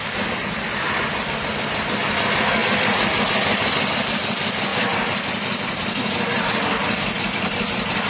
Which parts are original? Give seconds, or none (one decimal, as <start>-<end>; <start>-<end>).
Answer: 0.0-8.1